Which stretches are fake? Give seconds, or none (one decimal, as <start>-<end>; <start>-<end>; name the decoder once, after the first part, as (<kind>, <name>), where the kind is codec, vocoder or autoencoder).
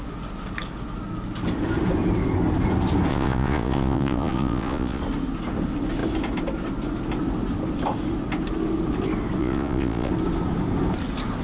3.1-5.0 (vocoder, Vocos); 9.4-10.1